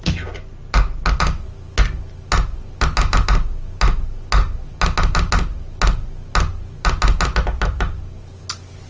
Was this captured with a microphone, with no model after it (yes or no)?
yes